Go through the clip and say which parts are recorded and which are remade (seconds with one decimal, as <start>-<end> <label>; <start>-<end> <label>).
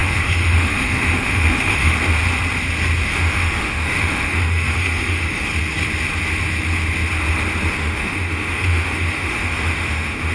0.0-1.9 remade; 1.9-3.0 recorded; 3.0-5.5 remade; 5.5-7.7 recorded; 7.7-10.3 remade